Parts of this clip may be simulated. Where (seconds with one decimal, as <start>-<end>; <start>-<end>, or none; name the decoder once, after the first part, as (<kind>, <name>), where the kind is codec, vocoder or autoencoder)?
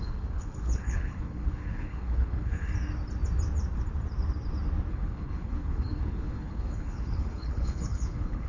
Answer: 0.0-2.7 (codec, HILCodec); 4.9-8.5